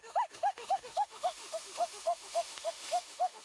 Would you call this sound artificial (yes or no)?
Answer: yes